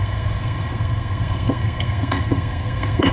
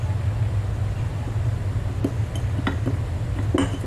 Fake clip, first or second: first